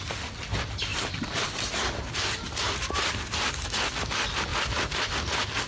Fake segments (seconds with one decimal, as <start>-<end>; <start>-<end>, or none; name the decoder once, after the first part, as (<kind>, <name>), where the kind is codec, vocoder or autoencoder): 0.9-1.6 (vocoder, BigVGAN v2); 4.5-5.1